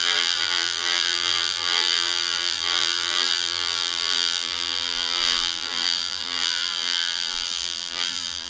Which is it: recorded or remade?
remade